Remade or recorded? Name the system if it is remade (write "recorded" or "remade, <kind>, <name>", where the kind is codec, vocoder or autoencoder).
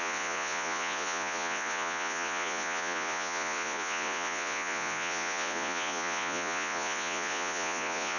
remade, vocoder, Vocos